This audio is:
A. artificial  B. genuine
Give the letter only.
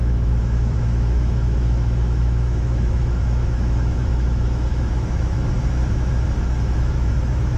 A